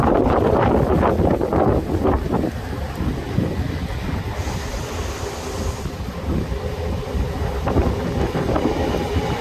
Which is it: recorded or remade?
recorded